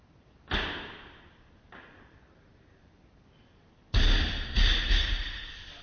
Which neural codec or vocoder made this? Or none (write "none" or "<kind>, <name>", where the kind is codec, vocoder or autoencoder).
none